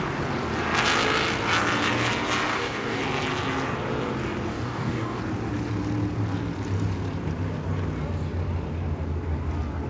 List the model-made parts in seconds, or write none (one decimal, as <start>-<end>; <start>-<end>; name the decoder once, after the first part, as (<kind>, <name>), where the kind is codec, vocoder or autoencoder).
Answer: 2.5-3.0 (codec, DAC); 4.5-5.2